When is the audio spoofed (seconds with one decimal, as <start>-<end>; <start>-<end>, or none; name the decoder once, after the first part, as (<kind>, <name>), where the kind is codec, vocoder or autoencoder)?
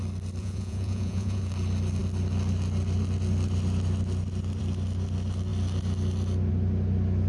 0.4-1.4 (vocoder, Vocos)